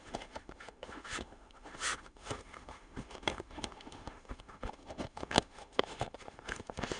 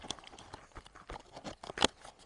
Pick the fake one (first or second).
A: first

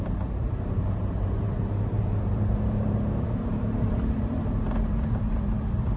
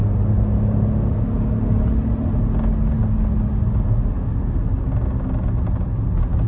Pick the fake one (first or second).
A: first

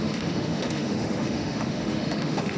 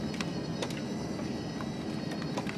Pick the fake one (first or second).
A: first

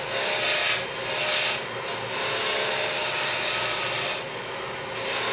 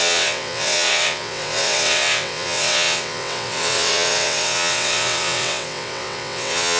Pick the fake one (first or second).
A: second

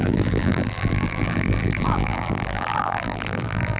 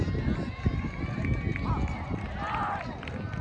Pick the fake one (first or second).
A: first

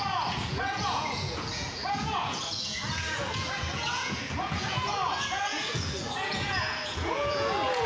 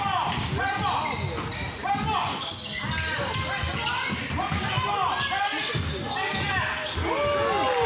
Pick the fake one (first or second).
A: first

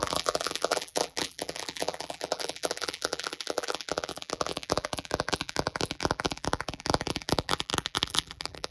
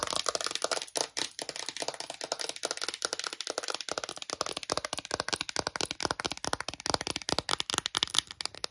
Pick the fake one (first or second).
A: first